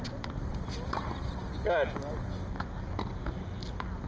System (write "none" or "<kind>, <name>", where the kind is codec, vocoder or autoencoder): none